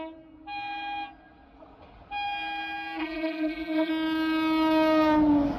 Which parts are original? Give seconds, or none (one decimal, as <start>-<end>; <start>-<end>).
0.0-3.0; 3.9-5.6

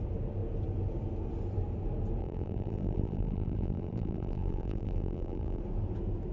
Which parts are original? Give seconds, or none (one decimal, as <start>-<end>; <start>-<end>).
0.0-2.2; 5.6-6.3

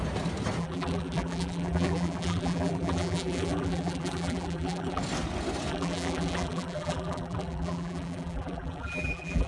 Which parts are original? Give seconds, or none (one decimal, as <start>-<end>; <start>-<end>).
0.0-0.6; 5.0-5.7

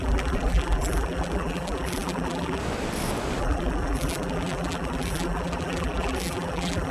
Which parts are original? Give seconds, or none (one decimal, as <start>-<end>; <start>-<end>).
2.6-3.4

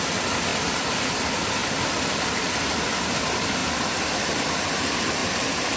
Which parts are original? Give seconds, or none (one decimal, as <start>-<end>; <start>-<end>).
0.0-1.6; 2.5-3.6; 4.7-5.8